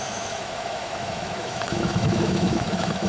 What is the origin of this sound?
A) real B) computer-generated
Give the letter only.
B